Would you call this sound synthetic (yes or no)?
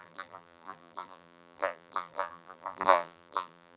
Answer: yes